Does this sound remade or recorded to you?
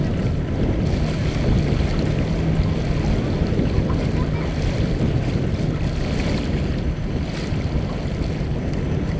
recorded